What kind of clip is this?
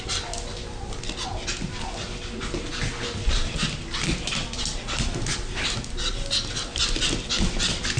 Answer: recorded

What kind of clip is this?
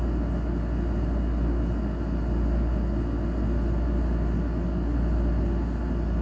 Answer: recorded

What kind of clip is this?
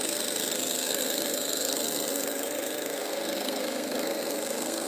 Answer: remade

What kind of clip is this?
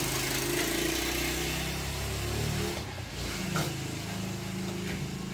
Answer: recorded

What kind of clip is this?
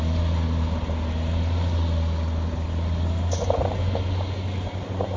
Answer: recorded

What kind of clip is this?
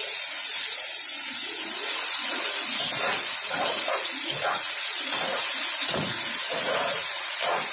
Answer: remade